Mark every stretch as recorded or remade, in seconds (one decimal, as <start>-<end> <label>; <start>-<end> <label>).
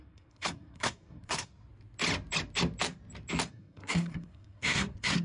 0.0-1.5 remade; 1.5-3.5 recorded; 3.5-5.2 remade